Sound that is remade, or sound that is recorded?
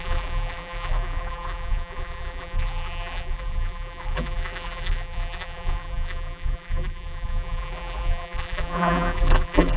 remade